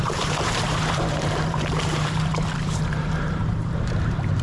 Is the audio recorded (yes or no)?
no